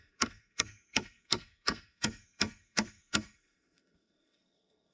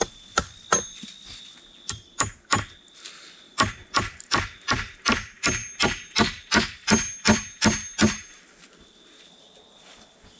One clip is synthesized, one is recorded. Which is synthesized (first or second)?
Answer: first